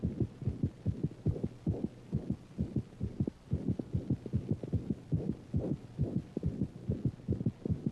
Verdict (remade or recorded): recorded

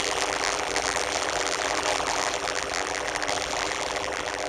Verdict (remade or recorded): remade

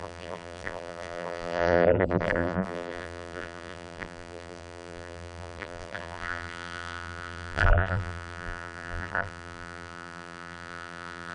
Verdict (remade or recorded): remade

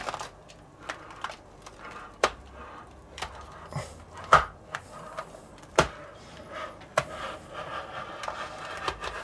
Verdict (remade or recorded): remade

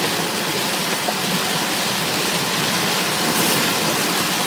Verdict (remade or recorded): recorded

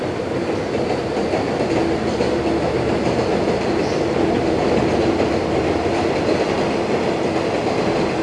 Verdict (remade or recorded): recorded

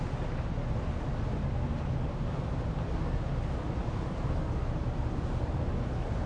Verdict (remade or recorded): recorded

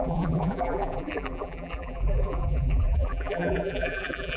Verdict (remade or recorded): remade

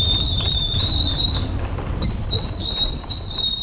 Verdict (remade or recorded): remade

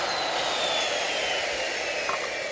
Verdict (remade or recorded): recorded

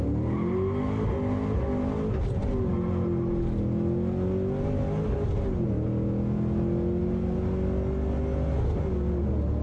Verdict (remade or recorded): recorded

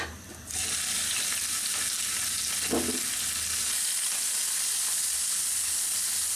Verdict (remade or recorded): recorded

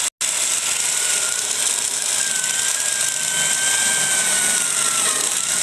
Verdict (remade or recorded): recorded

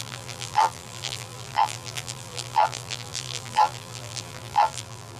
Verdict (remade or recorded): remade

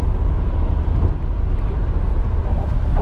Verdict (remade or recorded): remade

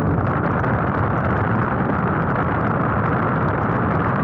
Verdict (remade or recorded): remade